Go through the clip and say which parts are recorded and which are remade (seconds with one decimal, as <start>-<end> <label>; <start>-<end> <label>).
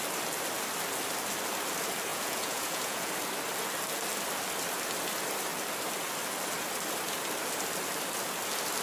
0.0-2.1 recorded; 2.1-3.1 remade; 3.1-8.8 recorded